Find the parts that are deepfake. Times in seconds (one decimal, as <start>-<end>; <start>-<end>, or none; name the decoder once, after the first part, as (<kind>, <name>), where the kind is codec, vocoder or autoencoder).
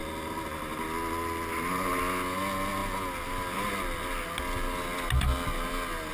1.5-2.0 (vocoder, BigVGAN v2)